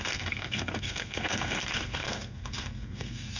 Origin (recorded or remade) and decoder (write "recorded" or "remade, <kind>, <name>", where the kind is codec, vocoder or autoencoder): remade, codec, SNAC